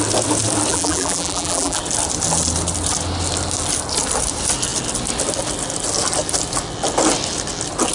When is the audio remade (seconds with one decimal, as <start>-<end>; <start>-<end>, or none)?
0.7-1.8